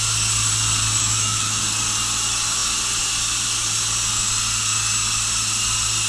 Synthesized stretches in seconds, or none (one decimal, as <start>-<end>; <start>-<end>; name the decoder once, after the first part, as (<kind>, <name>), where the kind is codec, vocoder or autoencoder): 1.0-1.6 (autoencoder, DAC-VAE)